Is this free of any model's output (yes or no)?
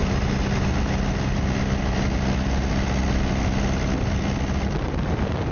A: yes